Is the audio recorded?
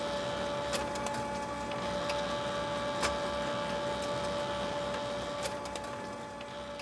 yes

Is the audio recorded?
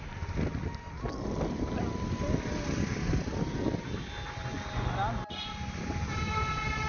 yes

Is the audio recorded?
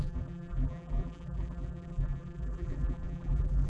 no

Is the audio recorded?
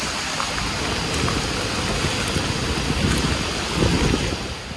yes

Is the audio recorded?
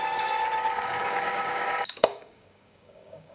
no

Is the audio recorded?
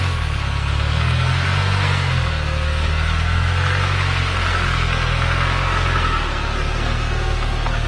no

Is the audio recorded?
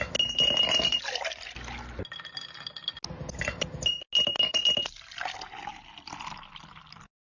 yes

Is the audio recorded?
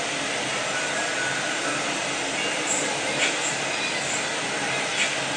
yes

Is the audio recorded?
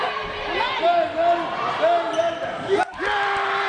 yes